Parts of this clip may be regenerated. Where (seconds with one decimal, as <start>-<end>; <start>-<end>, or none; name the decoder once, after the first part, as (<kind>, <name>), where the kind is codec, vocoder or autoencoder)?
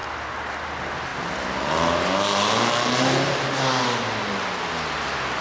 none